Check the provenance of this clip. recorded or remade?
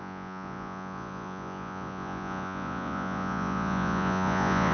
remade